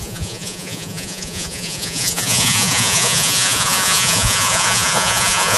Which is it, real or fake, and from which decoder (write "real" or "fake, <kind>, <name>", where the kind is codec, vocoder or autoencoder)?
fake, vocoder, Vocos